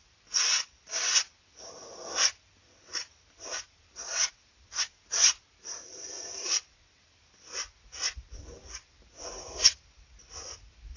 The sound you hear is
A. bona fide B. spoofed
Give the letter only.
A